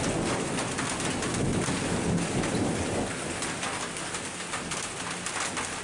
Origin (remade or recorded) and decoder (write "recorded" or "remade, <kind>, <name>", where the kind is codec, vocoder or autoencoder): recorded